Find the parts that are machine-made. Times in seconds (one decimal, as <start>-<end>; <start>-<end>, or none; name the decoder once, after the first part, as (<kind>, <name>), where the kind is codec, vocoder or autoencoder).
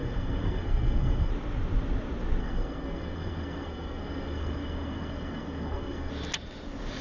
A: 0.0-1.3 (codec, SNAC); 2.4-6.1